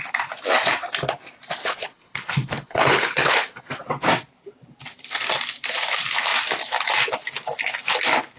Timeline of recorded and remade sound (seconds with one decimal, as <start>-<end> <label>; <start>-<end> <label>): 0.0-1.6 recorded; 1.6-3.6 remade; 3.6-8.4 recorded